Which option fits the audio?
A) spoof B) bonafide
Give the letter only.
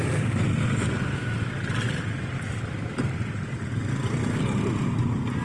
B